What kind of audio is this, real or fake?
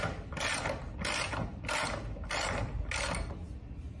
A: real